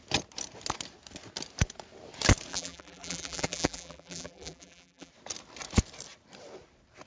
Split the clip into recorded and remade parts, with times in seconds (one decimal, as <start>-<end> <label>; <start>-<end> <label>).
0.0-2.5 recorded; 2.5-5.1 remade; 5.1-7.1 recorded